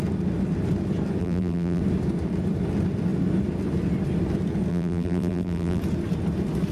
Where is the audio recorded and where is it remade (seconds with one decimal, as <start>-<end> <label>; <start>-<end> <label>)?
0.0-1.2 recorded; 1.2-1.8 remade; 1.8-4.7 recorded; 4.7-5.8 remade; 5.8-6.7 recorded